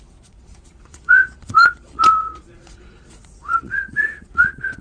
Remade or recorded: remade